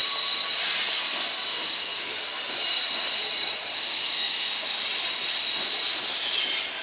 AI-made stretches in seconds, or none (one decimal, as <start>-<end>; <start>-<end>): 1.5-2.2; 3.7-4.8